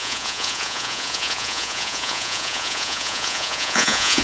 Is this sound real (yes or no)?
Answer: no